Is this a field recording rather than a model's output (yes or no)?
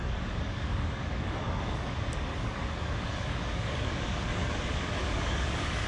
no